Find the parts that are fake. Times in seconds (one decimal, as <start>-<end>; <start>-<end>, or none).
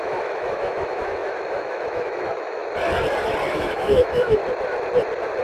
0.0-2.6; 3.5-4.4